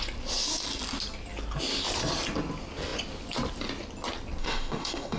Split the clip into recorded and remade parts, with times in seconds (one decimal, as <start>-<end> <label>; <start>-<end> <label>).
0.0-4.4 recorded; 4.4-5.2 remade